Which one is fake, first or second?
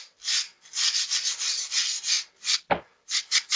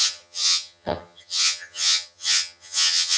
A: second